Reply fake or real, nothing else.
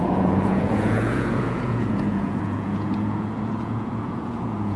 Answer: fake